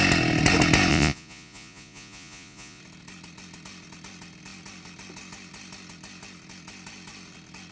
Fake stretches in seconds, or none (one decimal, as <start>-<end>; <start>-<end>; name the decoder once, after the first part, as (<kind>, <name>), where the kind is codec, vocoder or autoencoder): 0.9-2.8 (vocoder, Vocos)